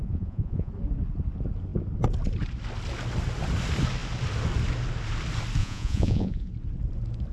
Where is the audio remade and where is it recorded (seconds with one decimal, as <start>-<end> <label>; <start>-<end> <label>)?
0.0-0.7 remade; 0.7-5.6 recorded; 5.6-6.5 remade; 6.5-7.3 recorded